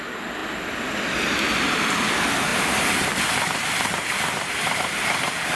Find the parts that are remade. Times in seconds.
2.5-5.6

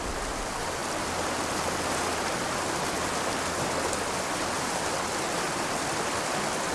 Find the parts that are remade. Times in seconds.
none

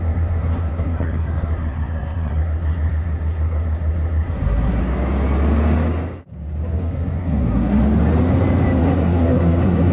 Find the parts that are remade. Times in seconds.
0.0-4.8; 6.8-7.8; 8.8-9.9

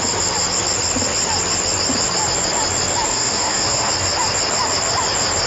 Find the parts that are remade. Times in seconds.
3.1-3.9

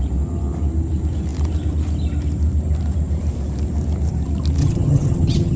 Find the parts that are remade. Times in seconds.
4.6-5.6

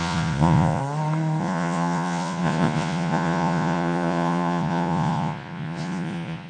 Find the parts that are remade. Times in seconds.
0.0-0.8; 1.4-6.5